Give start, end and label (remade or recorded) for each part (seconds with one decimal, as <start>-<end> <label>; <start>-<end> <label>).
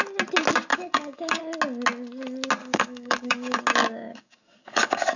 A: 0.0-0.7 recorded; 0.7-1.4 remade; 1.4-2.6 recorded; 2.6-3.6 remade; 3.6-4.1 recorded; 4.1-5.2 remade